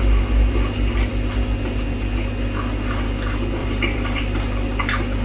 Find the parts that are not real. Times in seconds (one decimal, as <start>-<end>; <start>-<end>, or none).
3.6-4.4